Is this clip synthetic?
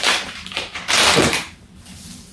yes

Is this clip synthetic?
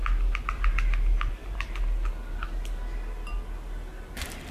no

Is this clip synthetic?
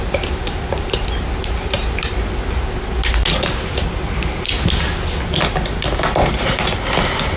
no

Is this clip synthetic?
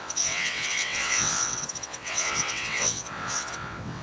yes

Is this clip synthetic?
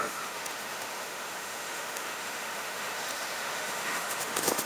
yes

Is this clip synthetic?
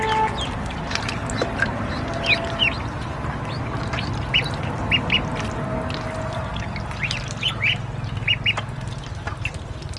no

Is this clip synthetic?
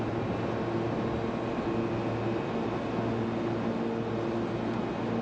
no